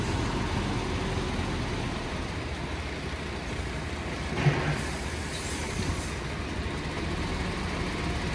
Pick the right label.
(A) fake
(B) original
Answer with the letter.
B